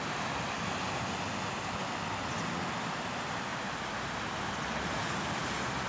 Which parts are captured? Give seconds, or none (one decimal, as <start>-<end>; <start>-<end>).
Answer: 0.0-3.5; 5.0-5.9